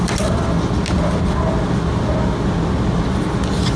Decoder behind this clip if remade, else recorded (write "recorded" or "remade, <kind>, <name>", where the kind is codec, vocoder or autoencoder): recorded